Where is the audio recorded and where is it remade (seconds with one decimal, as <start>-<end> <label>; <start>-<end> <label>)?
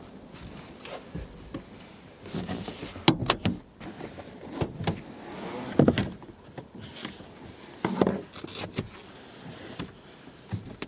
0.0-10.9 recorded